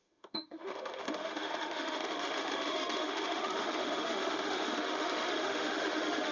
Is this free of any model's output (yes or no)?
no